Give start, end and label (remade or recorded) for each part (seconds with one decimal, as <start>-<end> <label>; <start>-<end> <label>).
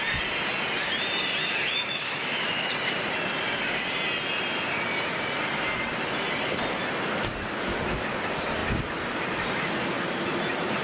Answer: 0.0-1.4 recorded; 1.4-2.7 remade; 2.7-10.8 recorded